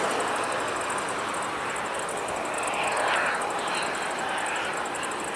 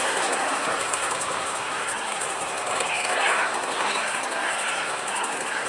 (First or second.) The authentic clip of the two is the first